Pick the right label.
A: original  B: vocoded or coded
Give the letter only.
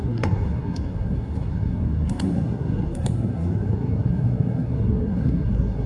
B